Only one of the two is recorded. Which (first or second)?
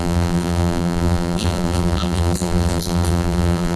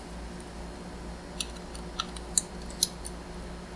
second